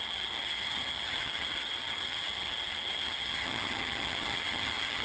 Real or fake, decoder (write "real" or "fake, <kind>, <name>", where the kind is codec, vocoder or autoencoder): fake, vocoder, HiFi-GAN